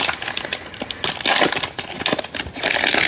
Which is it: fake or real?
real